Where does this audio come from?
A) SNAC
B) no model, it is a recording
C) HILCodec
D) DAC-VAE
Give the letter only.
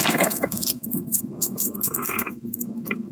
A